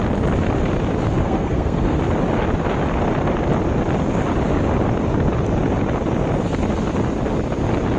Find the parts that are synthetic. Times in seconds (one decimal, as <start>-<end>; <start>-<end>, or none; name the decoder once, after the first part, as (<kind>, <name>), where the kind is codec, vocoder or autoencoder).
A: 1.2-2.0 (codec, SNAC)